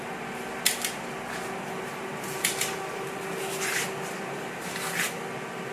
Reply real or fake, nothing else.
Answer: real